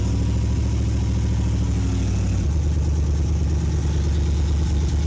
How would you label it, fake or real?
real